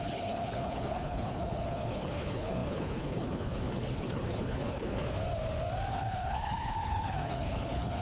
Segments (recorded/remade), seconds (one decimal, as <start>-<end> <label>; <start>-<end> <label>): 0.0-5.0 remade; 5.0-5.9 recorded; 5.9-8.0 remade